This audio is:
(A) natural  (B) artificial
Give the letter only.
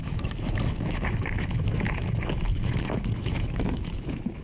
B